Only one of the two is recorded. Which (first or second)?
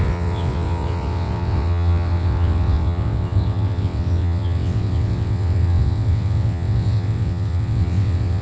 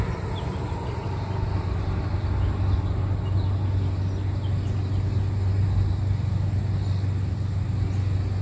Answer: second